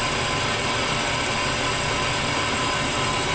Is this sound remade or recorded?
recorded